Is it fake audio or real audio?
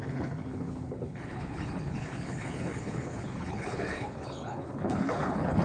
fake